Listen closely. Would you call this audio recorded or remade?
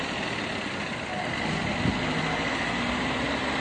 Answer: recorded